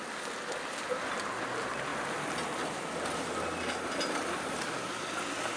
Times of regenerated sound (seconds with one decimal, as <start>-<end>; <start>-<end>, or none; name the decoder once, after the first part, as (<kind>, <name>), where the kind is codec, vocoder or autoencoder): none